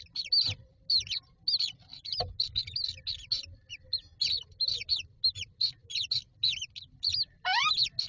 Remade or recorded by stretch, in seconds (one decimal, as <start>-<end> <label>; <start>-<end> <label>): 0.0-8.1 recorded